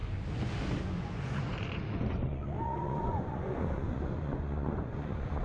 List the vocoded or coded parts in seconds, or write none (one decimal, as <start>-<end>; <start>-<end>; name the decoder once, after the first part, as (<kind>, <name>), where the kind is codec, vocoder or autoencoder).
0.8-5.4 (vocoder, Vocos)